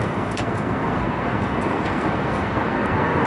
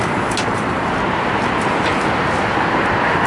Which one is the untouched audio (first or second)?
second